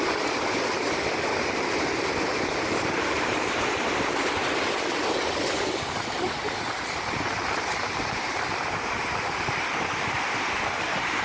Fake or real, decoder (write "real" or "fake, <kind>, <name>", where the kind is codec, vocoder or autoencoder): fake, vocoder, BigVGAN v2